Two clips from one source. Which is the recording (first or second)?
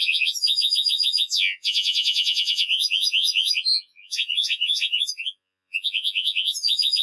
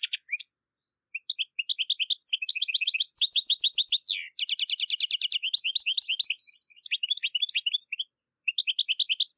second